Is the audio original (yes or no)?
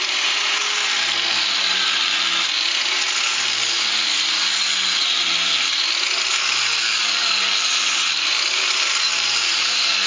no